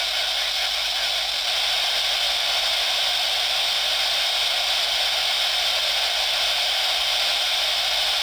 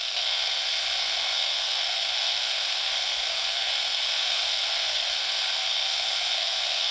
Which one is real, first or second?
first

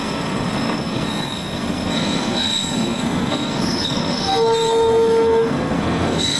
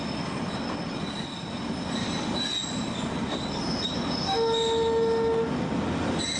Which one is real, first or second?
second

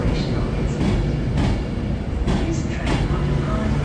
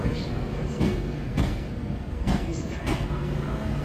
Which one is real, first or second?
first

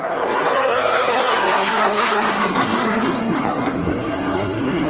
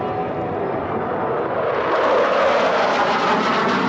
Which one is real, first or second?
second